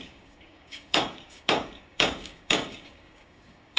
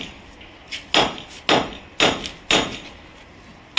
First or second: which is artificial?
first